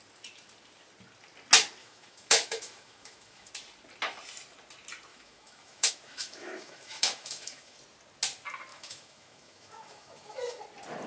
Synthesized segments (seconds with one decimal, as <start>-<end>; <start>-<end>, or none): 1.8-3.5; 5.1-7.8; 8.7-10.6